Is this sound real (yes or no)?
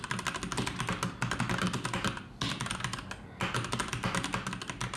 yes